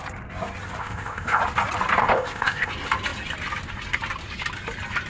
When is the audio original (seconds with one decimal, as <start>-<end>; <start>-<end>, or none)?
0.0-0.8; 1.4-2.0; 2.7-5.1